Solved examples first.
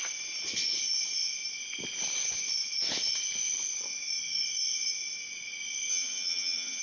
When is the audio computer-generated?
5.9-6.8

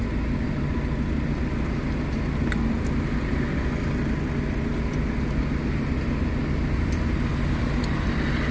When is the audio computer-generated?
none

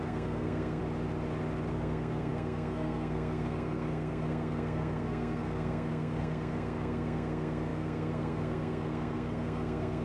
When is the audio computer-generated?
0.0-0.8; 1.7-10.0

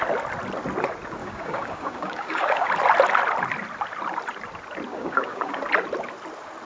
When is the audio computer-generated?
1.2-2.7; 4.9-5.6

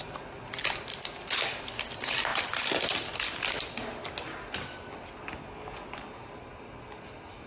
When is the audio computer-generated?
none

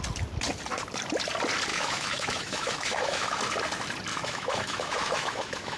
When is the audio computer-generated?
1.7-3.4; 4.1-5.8

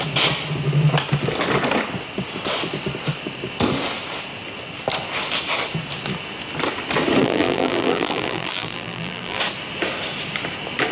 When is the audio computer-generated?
7.2-9.4

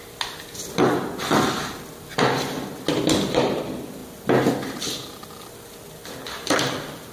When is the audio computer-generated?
none